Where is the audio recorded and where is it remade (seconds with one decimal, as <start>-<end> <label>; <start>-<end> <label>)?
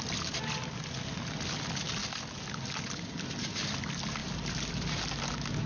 0.0-2.0 recorded; 2.0-2.8 remade; 2.8-4.2 recorded; 4.2-5.2 remade; 5.2-5.7 recorded